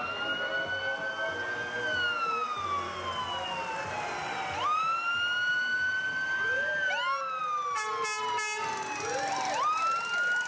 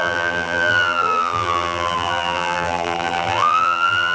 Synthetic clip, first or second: second